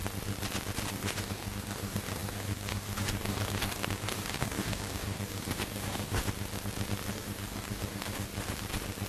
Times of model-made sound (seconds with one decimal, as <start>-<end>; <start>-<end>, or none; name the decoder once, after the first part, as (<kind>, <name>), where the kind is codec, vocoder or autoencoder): 0.9-6.2 (codec, DAC); 7.1-8.3

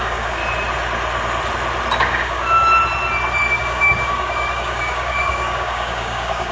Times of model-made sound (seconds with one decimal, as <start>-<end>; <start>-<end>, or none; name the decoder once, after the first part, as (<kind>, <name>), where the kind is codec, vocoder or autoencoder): 0.0-0.4 (codec, DAC); 2.0-2.7; 3.5-6.5

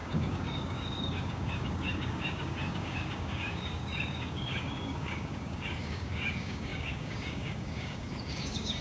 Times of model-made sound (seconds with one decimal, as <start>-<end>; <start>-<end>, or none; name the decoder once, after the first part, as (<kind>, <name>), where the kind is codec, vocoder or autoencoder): 0.0-8.8 (codec, DAC)

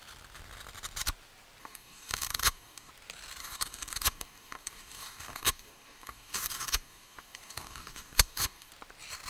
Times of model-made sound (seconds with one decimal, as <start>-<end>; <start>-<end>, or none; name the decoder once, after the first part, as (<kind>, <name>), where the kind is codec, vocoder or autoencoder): 1.6-2.9 (codec, DAC); 3.4-8.7